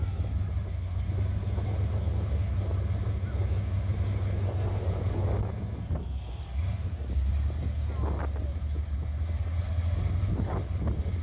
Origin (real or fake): real